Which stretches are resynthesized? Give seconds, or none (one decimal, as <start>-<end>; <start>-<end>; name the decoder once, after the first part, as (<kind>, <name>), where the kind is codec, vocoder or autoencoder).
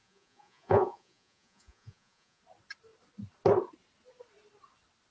0.0-2.4 (vocoder, Vocos)